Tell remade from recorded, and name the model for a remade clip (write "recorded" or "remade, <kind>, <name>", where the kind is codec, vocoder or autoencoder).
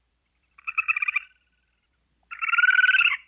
remade, vocoder, BigVGAN v2